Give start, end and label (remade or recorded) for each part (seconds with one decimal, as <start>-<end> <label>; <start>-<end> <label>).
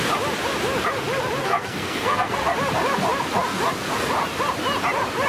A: 0.0-1.4 recorded; 1.4-2.4 remade; 2.4-5.3 recorded